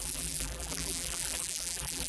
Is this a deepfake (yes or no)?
yes